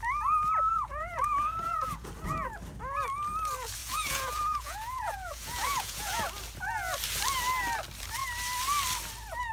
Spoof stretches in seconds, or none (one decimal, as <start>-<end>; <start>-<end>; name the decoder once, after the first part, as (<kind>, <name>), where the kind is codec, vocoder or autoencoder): 0.7-2.1 (vocoder, Vocos); 3.8-6.2